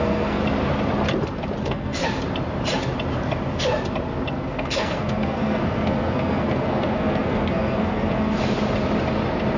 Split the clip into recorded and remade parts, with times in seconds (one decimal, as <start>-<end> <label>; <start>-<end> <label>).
0.0-0.4 remade; 0.4-1.6 recorded; 1.6-2.0 remade; 2.0-4.3 recorded; 4.3-8.4 remade; 8.4-9.6 recorded